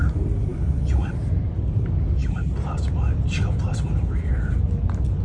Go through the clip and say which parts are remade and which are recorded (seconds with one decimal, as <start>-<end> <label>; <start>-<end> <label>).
0.0-5.2 recorded